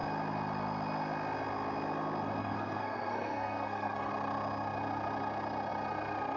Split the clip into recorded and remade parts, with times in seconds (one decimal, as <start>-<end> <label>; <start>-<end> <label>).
0.0-2.4 recorded; 2.4-4.1 remade; 4.1-6.4 recorded